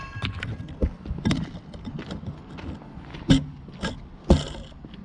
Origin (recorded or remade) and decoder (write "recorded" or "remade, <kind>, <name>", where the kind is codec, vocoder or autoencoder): recorded